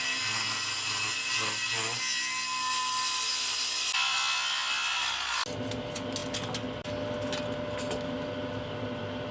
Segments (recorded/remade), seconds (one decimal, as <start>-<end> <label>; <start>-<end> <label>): 0.0-9.3 recorded